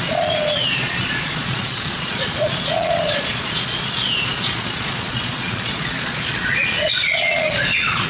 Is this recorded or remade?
remade